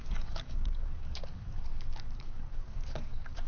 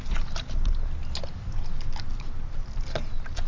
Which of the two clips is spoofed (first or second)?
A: first